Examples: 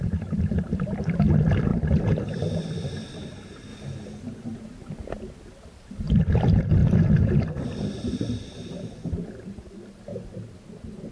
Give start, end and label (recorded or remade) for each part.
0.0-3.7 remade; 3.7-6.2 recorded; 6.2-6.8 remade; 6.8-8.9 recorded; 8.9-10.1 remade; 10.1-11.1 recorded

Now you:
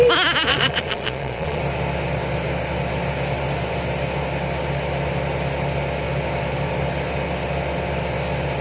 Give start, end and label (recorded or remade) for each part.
0.0-0.5 recorded; 0.5-1.6 remade; 1.6-8.6 recorded

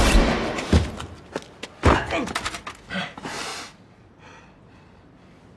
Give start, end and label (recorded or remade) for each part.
0.0-5.6 recorded

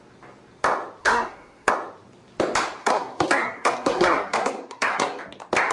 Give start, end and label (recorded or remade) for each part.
0.0-1.0 recorded; 1.0-1.7 remade; 1.7-2.8 recorded; 2.8-5.2 remade; 5.2-5.7 recorded